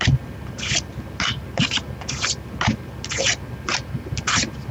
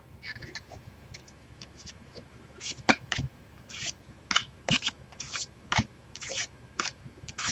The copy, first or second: second